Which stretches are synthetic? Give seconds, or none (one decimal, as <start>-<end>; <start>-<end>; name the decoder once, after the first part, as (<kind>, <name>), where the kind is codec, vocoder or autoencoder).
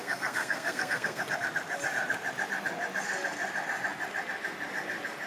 0.0-1.2 (codec, SNAC)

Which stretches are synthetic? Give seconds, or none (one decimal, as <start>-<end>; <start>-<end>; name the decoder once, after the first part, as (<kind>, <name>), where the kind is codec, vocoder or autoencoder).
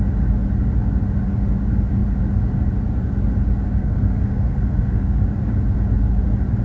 3.8-5.2 (codec, SNAC)